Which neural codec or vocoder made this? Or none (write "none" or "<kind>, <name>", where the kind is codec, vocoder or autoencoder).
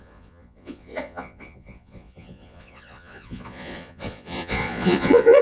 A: vocoder, Vocos